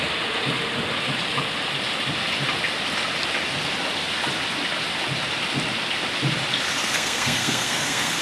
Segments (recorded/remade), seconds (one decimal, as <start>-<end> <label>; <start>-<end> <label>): 0.0-6.8 recorded; 6.8-8.2 remade